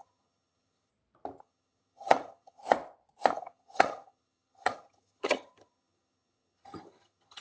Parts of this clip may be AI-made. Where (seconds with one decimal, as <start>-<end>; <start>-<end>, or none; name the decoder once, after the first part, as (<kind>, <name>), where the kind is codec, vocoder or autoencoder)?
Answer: 0.0-0.9 (vocoder, HiFi-GAN); 1.4-2.6; 3.3-7.4